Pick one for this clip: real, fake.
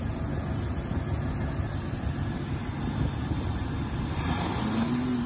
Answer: real